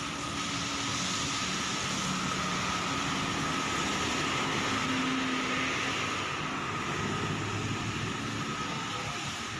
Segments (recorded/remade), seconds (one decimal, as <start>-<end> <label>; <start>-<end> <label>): 0.0-9.6 recorded